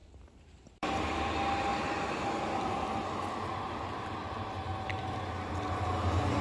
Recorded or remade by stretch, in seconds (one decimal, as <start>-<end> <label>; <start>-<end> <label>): 0.0-0.9 remade; 0.9-6.4 recorded